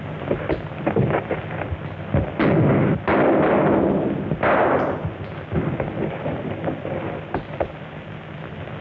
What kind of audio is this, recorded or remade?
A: recorded